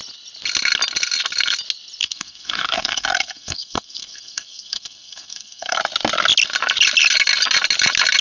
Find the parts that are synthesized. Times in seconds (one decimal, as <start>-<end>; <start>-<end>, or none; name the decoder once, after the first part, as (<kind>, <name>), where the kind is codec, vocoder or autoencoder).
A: 2.0-5.8 (codec, SNAC)